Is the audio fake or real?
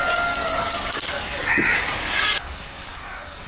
fake